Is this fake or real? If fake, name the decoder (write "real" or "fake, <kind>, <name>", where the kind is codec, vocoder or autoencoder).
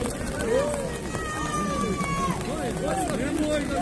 real